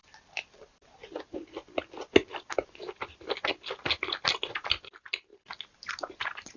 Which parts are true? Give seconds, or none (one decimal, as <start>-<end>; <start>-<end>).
1.2-2.3; 3.5-6.6